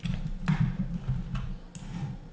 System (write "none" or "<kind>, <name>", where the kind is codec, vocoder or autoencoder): none